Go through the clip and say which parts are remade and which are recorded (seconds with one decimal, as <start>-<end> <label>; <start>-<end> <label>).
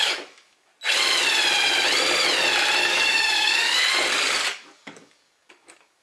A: 0.0-0.7 remade; 0.7-2.8 recorded; 2.8-3.8 remade; 3.8-4.5 recorded; 4.5-6.0 remade